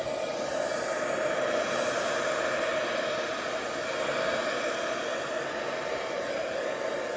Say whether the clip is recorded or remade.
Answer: recorded